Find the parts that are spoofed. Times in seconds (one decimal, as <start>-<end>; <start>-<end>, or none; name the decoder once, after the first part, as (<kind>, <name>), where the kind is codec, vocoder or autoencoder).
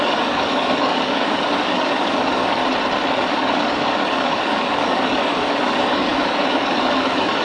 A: 0.0-2.6 (codec, DAC); 3.1-7.4